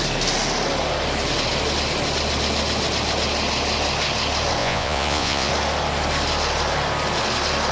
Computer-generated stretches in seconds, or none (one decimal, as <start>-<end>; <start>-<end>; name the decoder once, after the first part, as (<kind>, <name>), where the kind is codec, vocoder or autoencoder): 4.6-5.5 (vocoder, Vocos)